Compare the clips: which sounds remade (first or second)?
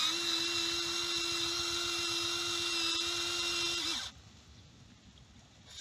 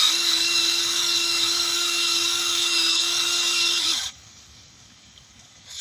second